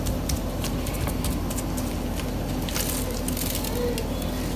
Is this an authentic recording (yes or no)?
yes